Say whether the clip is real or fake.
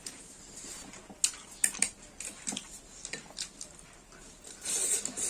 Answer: real